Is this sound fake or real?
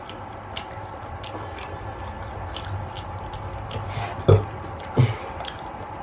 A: real